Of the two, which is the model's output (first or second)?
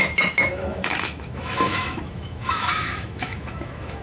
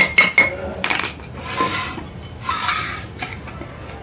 first